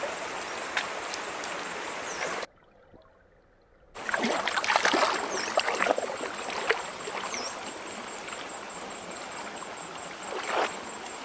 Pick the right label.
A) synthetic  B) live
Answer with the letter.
B